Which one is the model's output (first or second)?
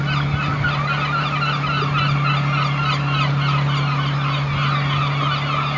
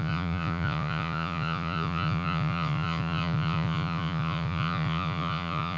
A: second